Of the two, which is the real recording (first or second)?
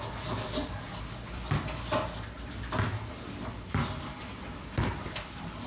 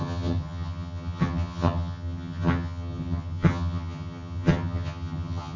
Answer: first